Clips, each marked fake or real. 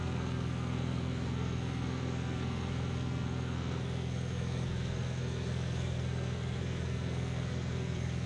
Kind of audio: fake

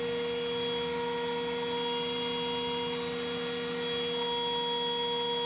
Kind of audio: real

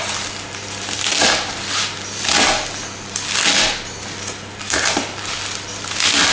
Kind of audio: real